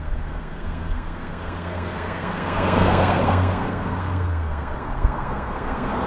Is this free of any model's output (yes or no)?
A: no